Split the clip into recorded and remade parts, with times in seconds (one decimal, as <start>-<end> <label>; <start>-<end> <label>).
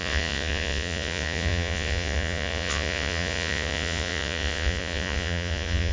0.0-5.9 remade